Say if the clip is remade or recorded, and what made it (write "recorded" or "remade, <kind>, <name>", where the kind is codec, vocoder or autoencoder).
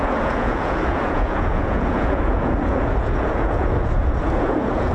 remade, vocoder, Vocos